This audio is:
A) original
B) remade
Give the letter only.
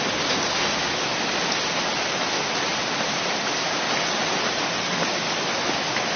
A